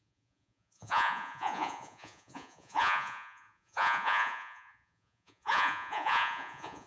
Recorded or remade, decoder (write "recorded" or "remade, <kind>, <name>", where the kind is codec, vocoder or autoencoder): remade, vocoder, Vocos